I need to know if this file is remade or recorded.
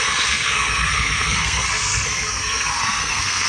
remade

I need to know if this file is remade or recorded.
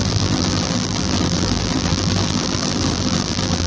remade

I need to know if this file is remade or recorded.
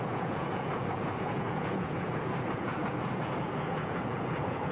remade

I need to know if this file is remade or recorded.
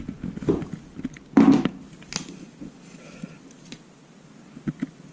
recorded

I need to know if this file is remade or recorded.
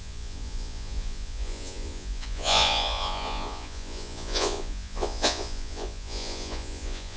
remade